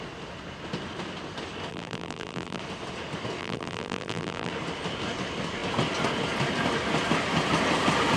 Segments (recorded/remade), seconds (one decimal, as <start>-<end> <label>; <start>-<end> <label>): 0.0-1.7 recorded; 1.7-2.6 remade; 2.6-3.4 recorded; 3.4-4.5 remade; 4.5-8.2 recorded